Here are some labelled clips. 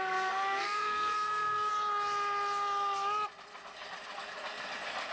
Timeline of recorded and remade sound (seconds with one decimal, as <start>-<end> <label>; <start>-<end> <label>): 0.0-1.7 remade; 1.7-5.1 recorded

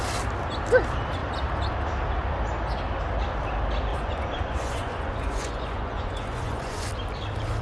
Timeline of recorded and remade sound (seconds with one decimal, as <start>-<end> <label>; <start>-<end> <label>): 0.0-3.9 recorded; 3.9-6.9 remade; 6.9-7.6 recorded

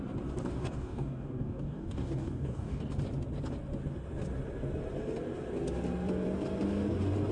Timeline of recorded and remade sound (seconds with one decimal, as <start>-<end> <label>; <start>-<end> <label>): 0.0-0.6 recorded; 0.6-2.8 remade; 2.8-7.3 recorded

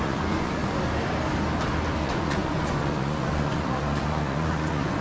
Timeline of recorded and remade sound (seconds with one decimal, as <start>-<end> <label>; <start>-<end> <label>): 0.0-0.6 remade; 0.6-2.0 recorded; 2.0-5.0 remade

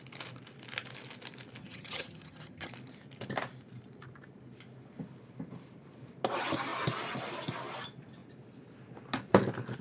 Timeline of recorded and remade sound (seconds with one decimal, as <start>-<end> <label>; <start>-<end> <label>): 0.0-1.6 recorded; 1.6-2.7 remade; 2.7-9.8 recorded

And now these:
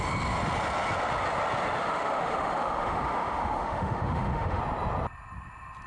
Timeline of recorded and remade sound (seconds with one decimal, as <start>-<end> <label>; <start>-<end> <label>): 0.0-1.8 recorded; 1.8-4.6 remade; 4.6-5.9 recorded

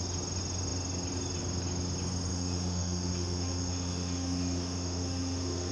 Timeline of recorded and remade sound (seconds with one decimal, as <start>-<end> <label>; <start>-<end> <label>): 0.0-2.3 recorded; 2.3-5.7 remade

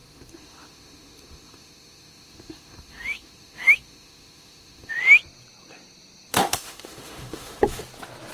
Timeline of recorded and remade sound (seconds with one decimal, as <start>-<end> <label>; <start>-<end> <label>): 0.0-4.9 remade; 4.9-6.3 recorded; 6.3-7.8 remade; 7.8-8.3 recorded